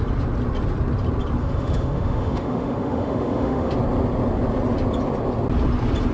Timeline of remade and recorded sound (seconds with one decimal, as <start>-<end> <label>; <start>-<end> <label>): 0.0-1.4 recorded; 1.4-3.7 remade; 3.7-6.1 recorded